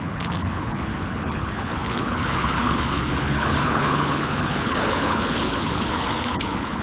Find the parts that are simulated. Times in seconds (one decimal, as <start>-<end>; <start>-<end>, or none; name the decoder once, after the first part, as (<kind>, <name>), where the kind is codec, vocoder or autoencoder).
0.0-6.8 (codec, HILCodec)